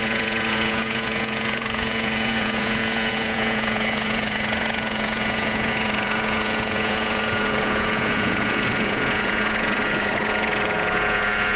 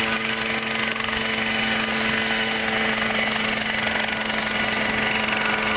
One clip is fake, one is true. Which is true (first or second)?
second